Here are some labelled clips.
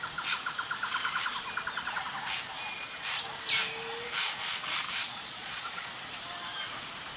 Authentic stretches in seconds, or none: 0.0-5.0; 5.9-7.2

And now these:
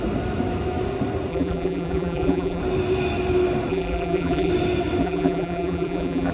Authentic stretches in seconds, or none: 0.0-1.3; 2.6-3.7; 4.5-5.0

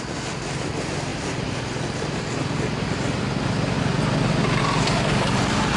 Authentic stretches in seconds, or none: 0.0-5.8

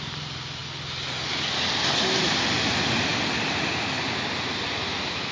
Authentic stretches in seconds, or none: 0.0-5.3

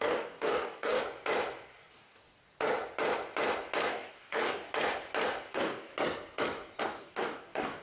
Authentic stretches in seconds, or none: 1.0-1.9; 2.4-3.9; 4.7-5.5; 5.9-6.8

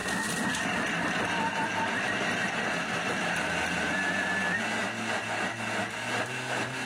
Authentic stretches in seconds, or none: 0.0-6.9